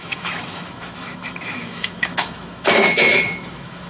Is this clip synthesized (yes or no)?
yes